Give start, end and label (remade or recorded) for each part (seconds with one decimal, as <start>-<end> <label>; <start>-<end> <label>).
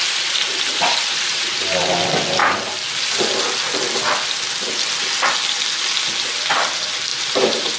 0.0-1.8 remade; 1.8-7.1 recorded; 7.1-7.8 remade